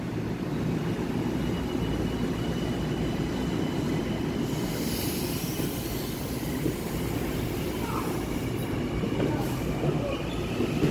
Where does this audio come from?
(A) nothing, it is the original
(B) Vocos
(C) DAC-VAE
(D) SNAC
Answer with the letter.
A